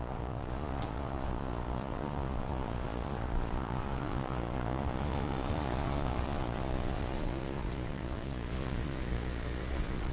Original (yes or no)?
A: no